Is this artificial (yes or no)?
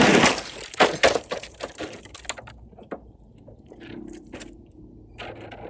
no